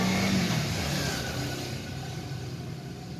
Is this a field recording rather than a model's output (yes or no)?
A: yes